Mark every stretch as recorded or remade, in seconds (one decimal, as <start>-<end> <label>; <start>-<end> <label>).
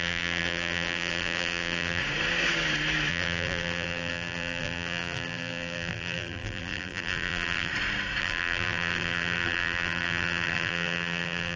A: 0.0-2.0 remade; 2.0-3.1 recorded; 3.1-7.7 remade; 7.7-8.2 recorded; 8.2-11.6 remade